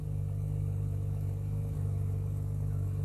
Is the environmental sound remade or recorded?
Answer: remade